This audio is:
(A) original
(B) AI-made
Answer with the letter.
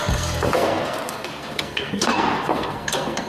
B